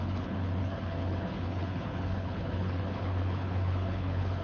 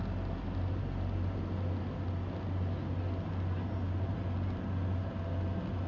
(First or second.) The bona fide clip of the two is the second